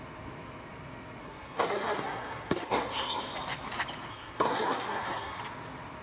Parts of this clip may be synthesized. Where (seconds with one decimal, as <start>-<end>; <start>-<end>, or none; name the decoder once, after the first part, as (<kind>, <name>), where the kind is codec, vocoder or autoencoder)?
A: 1.2-3.2 (codec, SNAC); 4.1-5.4